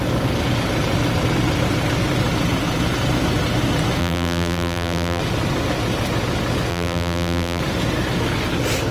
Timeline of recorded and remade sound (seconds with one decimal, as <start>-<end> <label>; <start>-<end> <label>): 0.0-4.0 recorded; 4.0-5.2 remade; 5.2-6.7 recorded; 6.7-7.6 remade; 7.6-8.9 recorded